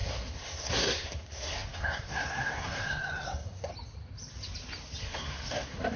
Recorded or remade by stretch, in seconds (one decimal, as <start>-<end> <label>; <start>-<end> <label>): 0.0-3.7 remade; 3.7-5.0 recorded; 5.0-6.0 remade